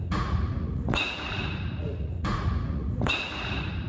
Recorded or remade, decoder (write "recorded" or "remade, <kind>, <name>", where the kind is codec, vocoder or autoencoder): remade, vocoder, Vocos